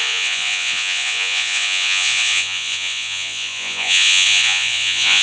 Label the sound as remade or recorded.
remade